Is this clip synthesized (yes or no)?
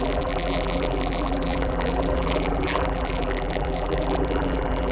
yes